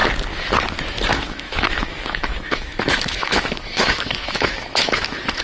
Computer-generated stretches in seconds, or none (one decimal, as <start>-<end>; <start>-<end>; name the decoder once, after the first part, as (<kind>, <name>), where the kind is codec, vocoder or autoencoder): 1.1-5.4 (autoencoder, DAC-VAE)